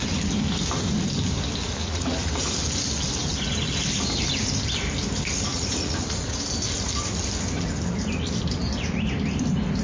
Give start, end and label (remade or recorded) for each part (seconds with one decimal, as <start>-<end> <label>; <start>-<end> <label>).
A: 0.0-1.8 recorded; 1.8-2.3 remade; 2.3-5.5 recorded; 5.5-6.4 remade; 6.4-9.8 recorded